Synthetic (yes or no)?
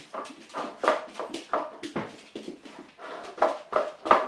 no